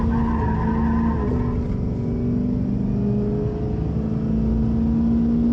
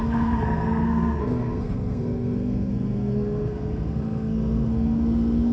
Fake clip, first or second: second